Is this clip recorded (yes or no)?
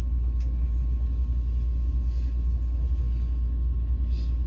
yes